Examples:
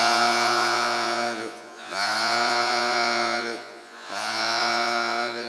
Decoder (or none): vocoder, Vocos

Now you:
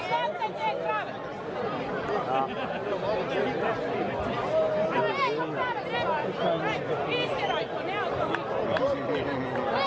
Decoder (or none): none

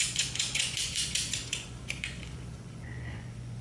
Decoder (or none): vocoder, Vocos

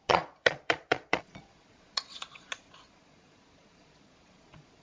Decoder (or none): vocoder, Vocos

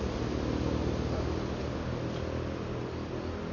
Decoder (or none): none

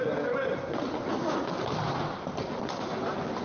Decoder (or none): none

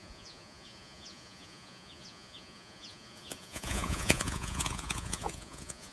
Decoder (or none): vocoder, Vocos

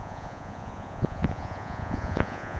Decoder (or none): vocoder, Vocos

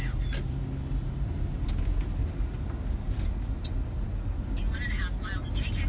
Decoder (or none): none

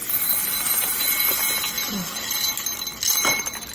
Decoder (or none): none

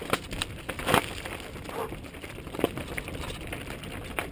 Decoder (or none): none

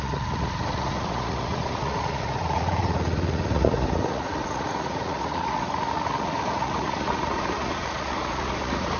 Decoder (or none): vocoder, Vocos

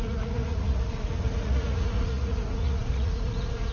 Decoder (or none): vocoder, Vocos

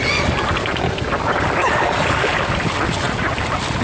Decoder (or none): none